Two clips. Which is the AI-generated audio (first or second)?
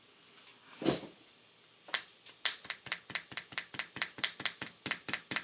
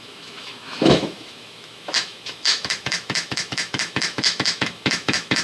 second